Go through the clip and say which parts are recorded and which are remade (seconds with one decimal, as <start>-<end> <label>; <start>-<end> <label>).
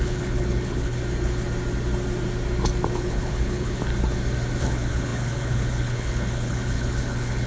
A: 0.0-1.0 remade; 1.0-2.9 recorded; 2.9-3.9 remade; 3.9-4.6 recorded; 4.6-7.5 remade